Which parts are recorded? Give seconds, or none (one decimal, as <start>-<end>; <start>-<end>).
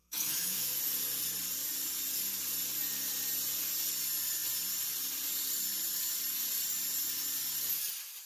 0.8-8.3